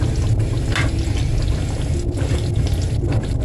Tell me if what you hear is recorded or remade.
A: recorded